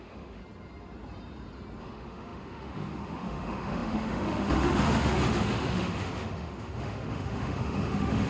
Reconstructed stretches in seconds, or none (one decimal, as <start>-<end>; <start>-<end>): 0.0-0.4; 1.8-8.3